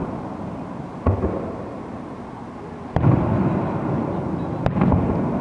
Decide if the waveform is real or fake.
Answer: real